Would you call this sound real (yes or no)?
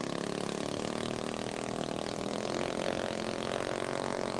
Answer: yes